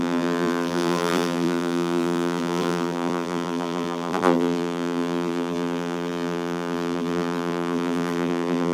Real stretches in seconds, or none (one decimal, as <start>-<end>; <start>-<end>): none

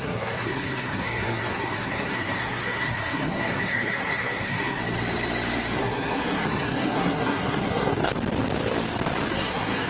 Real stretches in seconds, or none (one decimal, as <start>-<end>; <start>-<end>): 4.8-5.8; 8.1-9.3

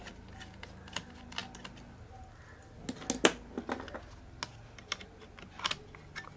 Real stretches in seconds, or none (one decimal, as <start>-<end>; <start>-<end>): 0.0-6.4